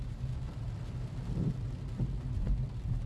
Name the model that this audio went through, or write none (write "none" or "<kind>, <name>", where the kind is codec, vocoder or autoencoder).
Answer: none